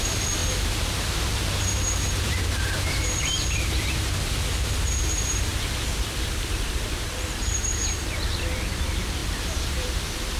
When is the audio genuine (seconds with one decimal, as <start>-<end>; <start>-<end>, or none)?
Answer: 5.5-6.4